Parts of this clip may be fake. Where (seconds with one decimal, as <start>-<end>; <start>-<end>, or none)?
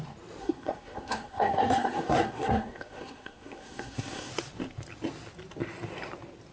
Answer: 0.4-4.3